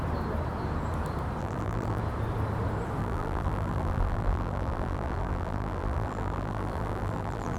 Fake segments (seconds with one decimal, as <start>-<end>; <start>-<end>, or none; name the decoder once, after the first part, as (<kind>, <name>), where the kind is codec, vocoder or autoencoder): 1.4-2.0 (vocoder, BigVGAN v2); 3.0-7.6